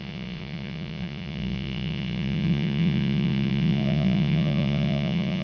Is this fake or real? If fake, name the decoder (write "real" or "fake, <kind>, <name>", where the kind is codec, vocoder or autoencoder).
fake, vocoder, Vocos